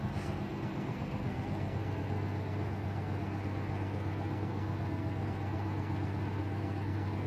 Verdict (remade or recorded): remade